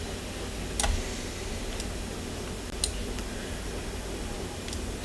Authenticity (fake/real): real